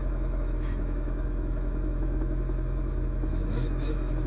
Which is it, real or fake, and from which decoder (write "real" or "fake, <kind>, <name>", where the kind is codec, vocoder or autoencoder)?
fake, autoencoder, DAC-VAE